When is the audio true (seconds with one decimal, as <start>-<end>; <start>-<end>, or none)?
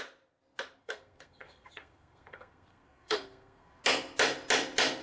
0.0-0.8; 3.8-5.0